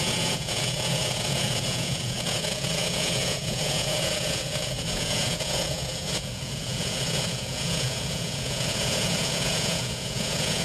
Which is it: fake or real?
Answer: fake